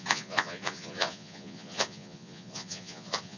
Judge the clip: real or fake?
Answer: fake